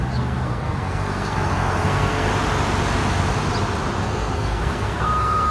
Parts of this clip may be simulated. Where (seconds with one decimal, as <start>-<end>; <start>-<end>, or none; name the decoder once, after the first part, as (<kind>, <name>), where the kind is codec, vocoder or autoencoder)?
0.0-2.3 (codec, SNAC); 4.0-5.5